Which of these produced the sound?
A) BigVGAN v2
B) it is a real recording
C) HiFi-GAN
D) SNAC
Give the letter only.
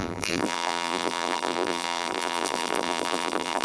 A